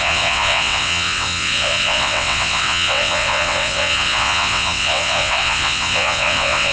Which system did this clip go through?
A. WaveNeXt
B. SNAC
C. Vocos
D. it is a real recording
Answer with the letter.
A